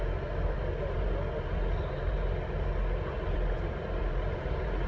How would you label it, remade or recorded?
remade